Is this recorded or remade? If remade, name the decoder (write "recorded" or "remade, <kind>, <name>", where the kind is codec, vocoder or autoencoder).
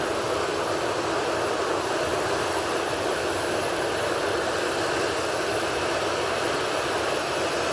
recorded